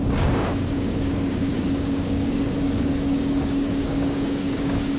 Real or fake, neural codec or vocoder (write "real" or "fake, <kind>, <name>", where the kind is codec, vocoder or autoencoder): fake, codec, DAC